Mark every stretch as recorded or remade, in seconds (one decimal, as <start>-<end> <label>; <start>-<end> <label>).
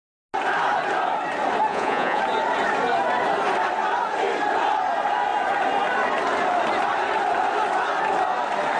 0.0-1.7 recorded; 1.7-2.2 remade; 2.2-8.8 recorded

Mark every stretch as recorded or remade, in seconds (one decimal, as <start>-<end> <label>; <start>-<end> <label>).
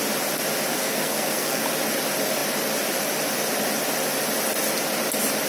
0.0-0.7 recorded; 0.7-1.6 remade; 1.6-5.5 recorded